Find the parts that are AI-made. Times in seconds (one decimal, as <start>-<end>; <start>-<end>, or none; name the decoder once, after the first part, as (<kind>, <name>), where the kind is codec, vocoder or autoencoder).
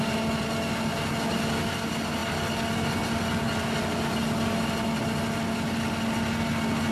none